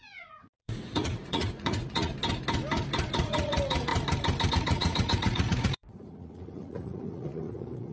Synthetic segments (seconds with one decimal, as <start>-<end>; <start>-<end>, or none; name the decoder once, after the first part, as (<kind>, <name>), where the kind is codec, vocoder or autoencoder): 0.0-2.1 (vocoder, Vocos); 3.1-3.9; 4.5-7.9